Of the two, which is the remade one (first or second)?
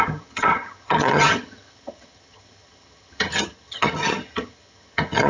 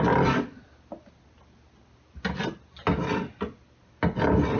first